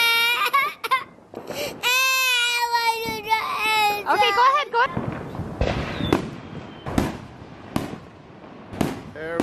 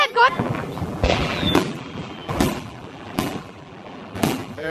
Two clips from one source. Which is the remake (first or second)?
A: second